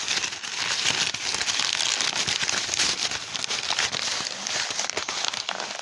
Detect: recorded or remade recorded